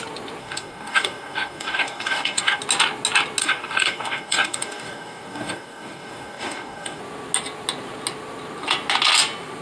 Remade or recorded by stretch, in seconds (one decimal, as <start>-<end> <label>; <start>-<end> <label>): 0.0-0.4 recorded; 0.4-2.6 remade; 2.6-3.4 recorded; 3.4-7.0 remade; 7.0-9.6 recorded